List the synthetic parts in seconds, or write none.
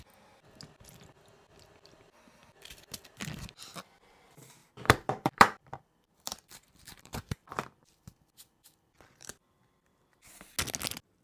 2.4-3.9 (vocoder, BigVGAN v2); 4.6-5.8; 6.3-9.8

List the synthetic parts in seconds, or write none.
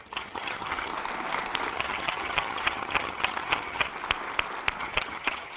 0.0-0.9 (vocoder, HiFi-GAN); 1.7-3.9; 4.8-5.6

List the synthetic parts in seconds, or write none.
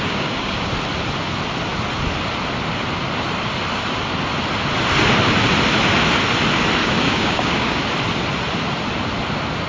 0.0-0.7 (codec, DAC); 6.8-7.8